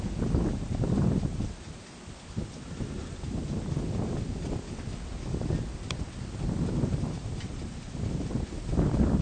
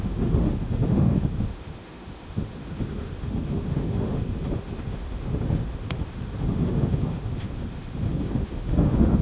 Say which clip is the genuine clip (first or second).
first